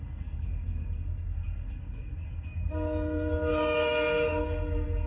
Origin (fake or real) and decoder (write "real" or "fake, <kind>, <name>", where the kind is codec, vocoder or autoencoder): fake, codec, SNAC